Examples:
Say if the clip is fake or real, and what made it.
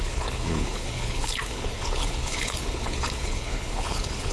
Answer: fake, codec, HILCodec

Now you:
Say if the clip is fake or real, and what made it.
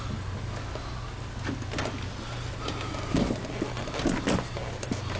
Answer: real